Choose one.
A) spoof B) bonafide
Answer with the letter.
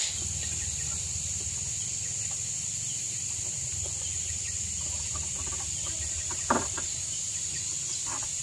B